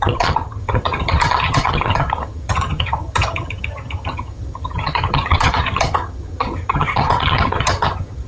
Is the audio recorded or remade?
remade